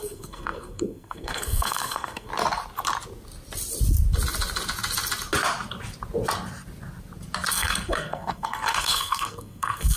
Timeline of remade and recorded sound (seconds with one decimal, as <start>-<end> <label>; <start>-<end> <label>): 0.0-2.3 remade; 2.3-7.5 recorded; 7.5-10.0 remade